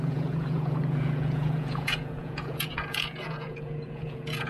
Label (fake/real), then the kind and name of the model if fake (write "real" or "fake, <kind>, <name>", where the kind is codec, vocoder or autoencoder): fake, vocoder, Vocos